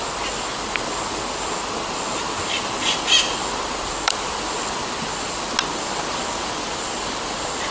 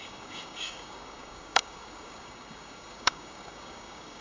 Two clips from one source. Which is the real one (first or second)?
first